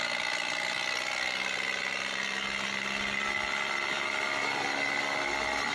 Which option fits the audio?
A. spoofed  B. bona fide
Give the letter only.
B